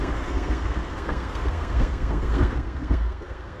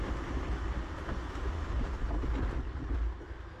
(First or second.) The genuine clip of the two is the second